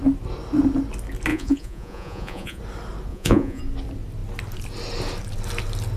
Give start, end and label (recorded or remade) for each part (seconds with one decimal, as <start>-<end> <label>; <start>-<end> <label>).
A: 0.0-1.3 recorded; 1.3-2.6 remade; 2.6-3.1 recorded; 3.1-3.6 remade; 3.6-6.0 recorded